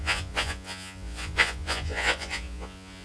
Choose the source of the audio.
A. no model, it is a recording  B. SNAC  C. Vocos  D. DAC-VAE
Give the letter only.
C